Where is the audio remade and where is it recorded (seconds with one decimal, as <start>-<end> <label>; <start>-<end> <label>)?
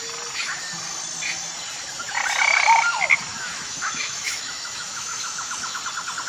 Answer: 0.0-3.3 recorded; 3.3-5.8 remade; 5.8-6.3 recorded